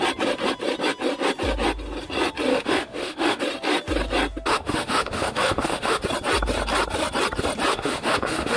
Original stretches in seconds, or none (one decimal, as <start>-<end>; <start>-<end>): 0.0-2.5; 3.4-4.5; 6.0-7.7